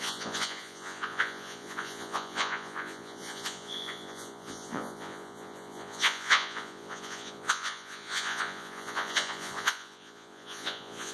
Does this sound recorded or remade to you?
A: remade